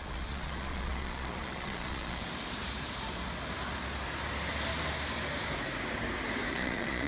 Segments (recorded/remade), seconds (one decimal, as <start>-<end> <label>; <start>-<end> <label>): 0.0-2.2 remade; 2.2-6.5 recorded; 6.5-7.1 remade